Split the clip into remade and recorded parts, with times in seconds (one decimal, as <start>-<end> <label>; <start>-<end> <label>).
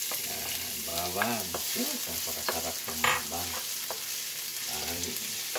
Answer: 0.0-0.9 remade; 0.9-3.7 recorded; 3.7-5.6 remade